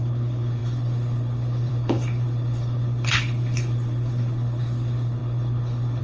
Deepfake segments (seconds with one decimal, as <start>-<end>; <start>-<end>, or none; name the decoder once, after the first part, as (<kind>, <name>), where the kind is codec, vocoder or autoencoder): 0.0-6.0 (codec, HILCodec)